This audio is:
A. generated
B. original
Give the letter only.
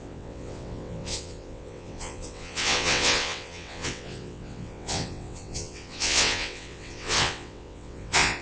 A